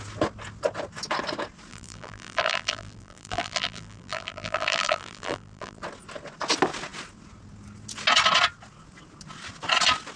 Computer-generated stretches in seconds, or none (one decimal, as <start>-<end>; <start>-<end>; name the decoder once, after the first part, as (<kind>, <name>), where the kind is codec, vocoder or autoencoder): 1.7-5.8 (vocoder, BigVGAN v2)